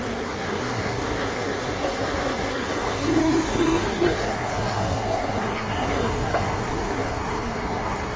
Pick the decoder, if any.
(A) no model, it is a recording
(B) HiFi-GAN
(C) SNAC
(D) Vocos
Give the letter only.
C